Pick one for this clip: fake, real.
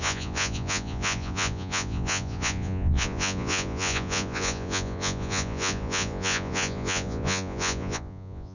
fake